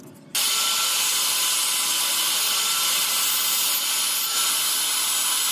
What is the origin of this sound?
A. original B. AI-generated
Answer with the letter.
A